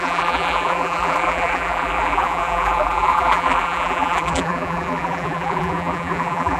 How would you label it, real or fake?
fake